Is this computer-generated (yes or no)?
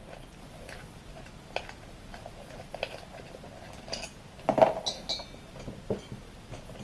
no